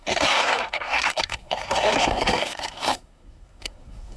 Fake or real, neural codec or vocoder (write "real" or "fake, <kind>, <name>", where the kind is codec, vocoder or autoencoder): fake, codec, SNAC